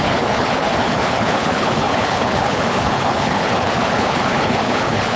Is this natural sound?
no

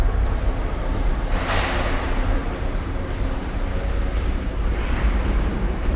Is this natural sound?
no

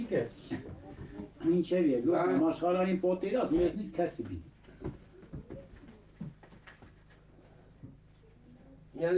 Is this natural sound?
yes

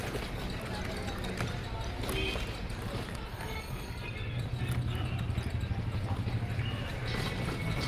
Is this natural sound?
yes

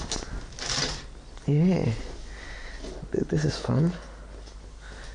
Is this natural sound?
yes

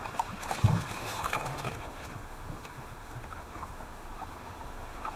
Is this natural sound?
no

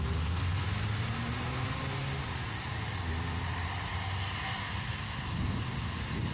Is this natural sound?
yes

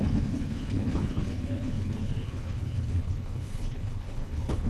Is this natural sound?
no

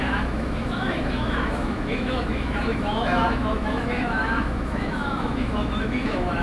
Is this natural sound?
no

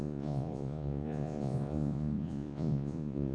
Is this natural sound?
no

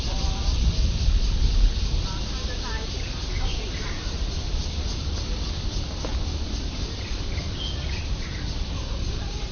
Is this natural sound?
yes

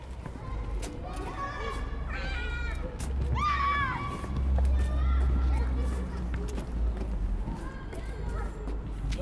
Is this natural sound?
yes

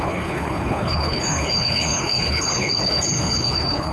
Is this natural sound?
no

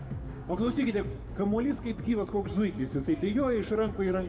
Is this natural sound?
no